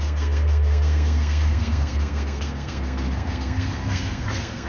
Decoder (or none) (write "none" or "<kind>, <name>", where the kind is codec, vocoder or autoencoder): codec, SNAC